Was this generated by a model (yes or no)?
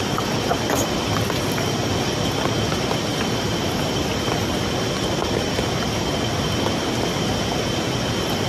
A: no